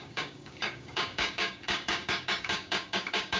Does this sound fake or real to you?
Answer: fake